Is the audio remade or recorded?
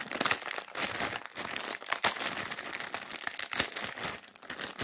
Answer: recorded